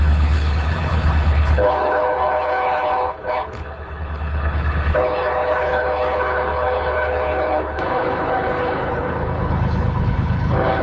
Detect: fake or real fake